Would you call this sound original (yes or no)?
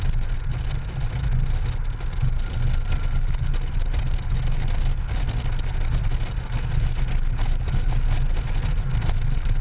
yes